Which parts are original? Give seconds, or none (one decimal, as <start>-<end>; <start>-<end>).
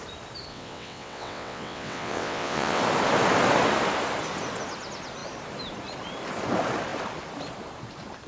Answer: 0.0-0.5; 2.8-8.3